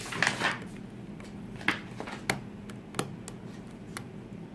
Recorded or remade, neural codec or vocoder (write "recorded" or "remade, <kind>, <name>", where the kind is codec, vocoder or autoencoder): recorded